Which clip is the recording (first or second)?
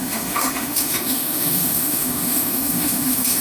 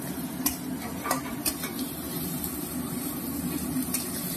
second